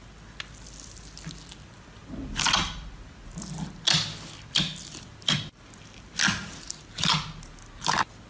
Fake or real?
real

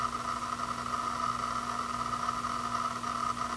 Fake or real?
real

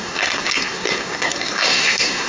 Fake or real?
fake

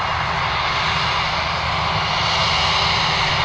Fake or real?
real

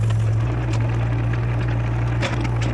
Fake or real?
real